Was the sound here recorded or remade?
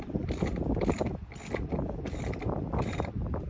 recorded